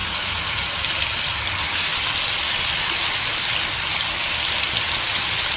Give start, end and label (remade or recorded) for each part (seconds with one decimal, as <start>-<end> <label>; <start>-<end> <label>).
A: 0.0-0.7 remade; 0.7-5.6 recorded